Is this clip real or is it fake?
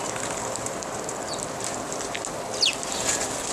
real